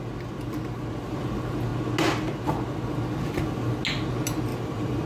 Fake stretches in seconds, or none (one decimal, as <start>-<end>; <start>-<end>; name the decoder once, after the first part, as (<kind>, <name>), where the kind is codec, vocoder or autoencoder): 4.5-5.1 (vocoder, BigVGAN v2)